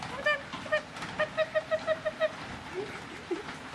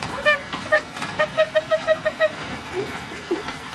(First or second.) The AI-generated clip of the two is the second